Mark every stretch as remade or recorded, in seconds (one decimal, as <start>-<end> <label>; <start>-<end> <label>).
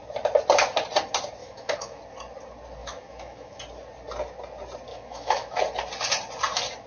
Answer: 0.0-1.4 recorded; 1.4-2.0 remade; 2.0-2.8 recorded; 2.8-3.6 remade; 3.6-4.9 recorded; 4.9-5.6 remade; 5.6-6.9 recorded